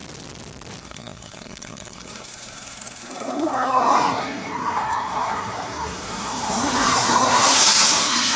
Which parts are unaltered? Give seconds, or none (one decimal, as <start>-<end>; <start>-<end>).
0.0-0.8